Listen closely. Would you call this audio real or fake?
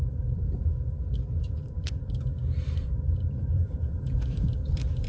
fake